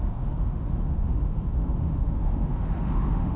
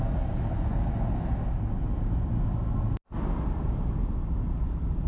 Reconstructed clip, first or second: first